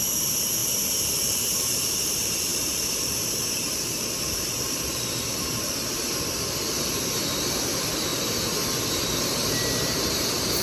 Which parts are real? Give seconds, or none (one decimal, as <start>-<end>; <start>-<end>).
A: 8.1-9.0